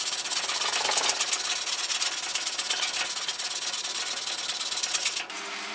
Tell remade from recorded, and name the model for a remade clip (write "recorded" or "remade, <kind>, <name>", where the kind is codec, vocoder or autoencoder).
recorded